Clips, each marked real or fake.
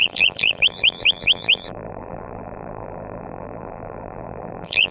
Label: fake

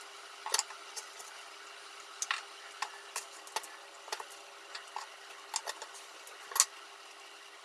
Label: real